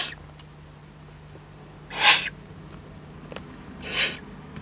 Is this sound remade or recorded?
recorded